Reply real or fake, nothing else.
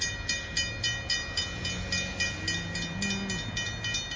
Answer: real